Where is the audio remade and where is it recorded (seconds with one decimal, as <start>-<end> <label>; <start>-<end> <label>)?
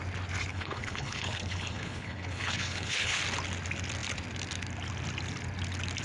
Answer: 0.0-0.5 recorded; 0.5-3.2 remade; 3.2-6.0 recorded